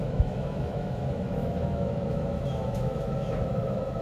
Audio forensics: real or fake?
fake